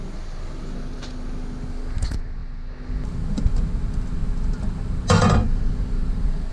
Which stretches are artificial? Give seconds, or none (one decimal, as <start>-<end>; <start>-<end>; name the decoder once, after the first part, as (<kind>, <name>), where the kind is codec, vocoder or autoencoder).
none